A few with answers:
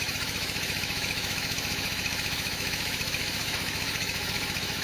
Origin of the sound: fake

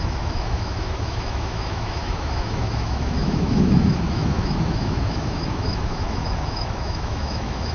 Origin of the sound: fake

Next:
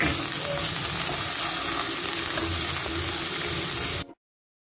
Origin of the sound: real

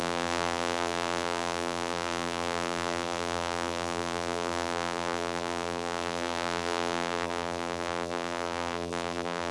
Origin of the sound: fake